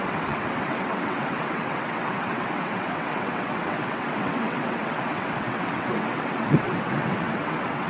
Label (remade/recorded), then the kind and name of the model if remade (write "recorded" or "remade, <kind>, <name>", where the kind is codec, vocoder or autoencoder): remade, vocoder, WaveNeXt